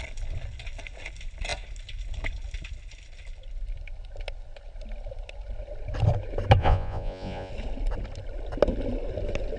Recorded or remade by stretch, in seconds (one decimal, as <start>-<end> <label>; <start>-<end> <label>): 0.0-6.6 recorded; 6.6-7.5 remade; 7.5-9.6 recorded